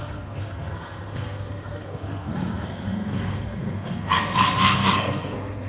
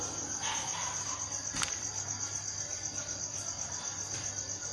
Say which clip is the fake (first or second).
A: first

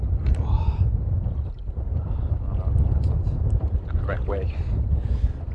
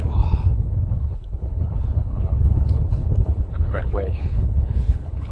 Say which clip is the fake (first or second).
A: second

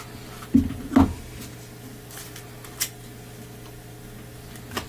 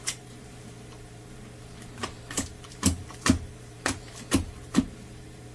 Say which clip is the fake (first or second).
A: second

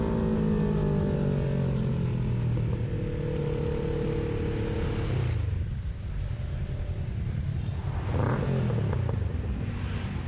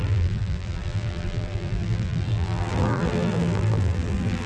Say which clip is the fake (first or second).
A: second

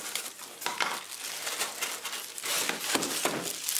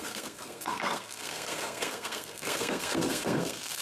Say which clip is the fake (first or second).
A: second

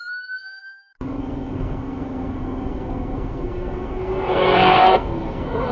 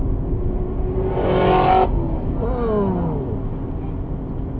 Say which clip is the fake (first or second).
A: first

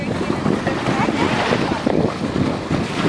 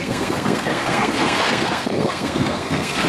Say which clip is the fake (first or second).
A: second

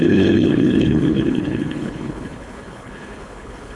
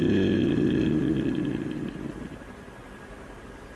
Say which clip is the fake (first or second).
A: first